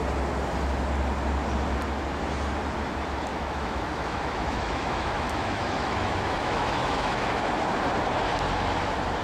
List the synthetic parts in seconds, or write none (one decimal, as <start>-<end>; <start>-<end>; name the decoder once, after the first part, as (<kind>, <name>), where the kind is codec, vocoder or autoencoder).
3.3-7.4 (autoencoder, DAC-VAE)